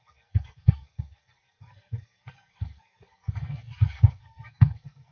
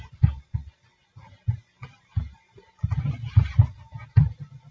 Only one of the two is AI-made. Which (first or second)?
first